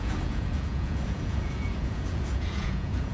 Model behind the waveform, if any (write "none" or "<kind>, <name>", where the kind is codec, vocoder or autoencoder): vocoder, Vocos